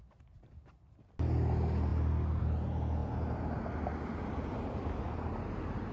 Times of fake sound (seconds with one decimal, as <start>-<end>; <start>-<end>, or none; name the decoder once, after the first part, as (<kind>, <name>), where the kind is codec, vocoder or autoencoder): none